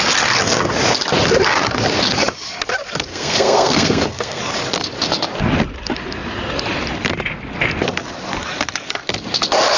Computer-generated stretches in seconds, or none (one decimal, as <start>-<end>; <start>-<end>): 3.1-4.4